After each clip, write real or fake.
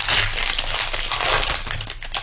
real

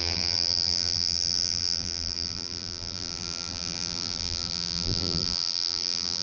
fake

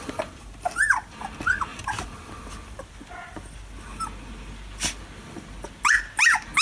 real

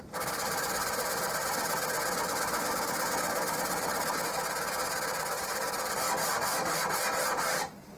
real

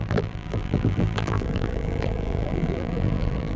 fake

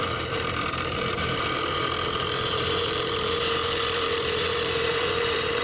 fake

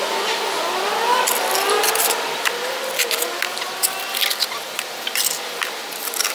fake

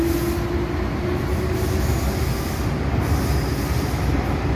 real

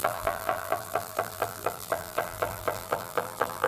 fake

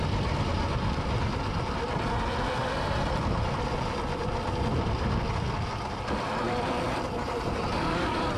real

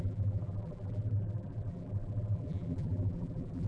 fake